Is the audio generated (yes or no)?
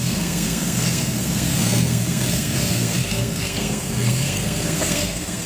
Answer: yes